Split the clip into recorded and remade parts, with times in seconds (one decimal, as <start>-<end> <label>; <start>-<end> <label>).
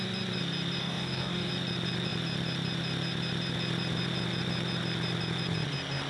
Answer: 0.0-0.8 recorded; 0.8-1.5 remade; 1.5-6.1 recorded